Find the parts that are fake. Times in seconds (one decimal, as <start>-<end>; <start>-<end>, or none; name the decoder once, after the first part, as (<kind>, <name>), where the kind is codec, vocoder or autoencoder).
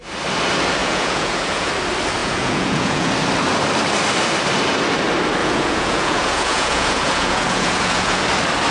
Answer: 0.8-1.7 (vocoder, Vocos); 2.2-3.1; 5.4-8.2